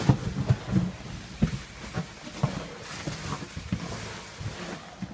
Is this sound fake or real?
real